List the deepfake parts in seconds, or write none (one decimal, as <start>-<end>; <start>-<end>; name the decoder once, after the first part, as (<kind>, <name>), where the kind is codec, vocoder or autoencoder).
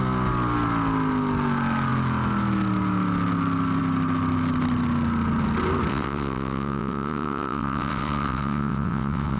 5.9-9.4 (vocoder, WaveNeXt)